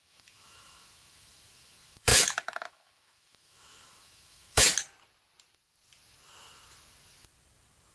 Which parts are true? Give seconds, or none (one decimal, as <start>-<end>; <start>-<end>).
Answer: 4.7-7.9